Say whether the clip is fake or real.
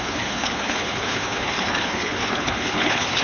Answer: fake